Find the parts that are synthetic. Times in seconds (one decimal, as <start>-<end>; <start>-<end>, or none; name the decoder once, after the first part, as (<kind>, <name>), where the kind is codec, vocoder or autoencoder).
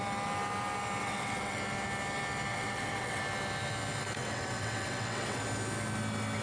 1.0-1.6 (vocoder, WaveNeXt); 2.5-3.2; 4.2-5.4